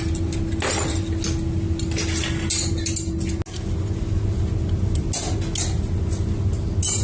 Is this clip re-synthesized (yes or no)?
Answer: no